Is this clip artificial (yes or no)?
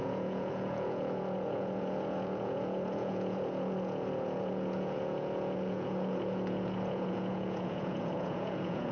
yes